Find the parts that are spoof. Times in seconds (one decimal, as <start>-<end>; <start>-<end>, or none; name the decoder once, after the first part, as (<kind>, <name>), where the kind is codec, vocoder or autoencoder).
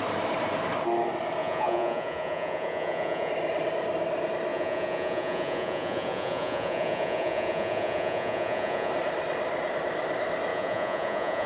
1.4-3.3 (vocoder, Vocos); 4.5-8.9; 10.5-11.5